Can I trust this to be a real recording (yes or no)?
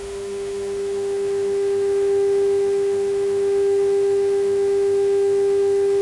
no